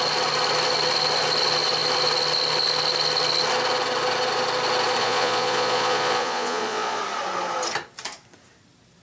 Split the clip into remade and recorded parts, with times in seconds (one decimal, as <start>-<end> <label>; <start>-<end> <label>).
0.0-5.0 recorded; 5.0-7.0 remade; 7.0-9.0 recorded